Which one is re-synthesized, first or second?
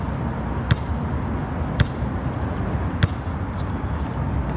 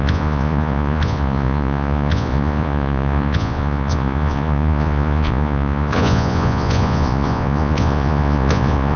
second